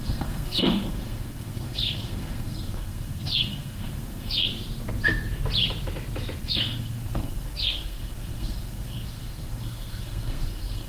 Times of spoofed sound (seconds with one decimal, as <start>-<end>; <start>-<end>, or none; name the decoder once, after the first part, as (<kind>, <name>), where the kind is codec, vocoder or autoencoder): 0.0-4.5 (codec, SNAC); 6.4-10.9